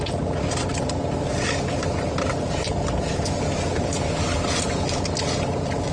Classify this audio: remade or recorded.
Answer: recorded